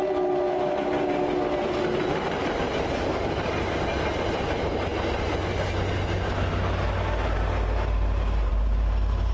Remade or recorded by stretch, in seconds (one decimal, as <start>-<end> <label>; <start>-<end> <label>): 0.0-9.3 recorded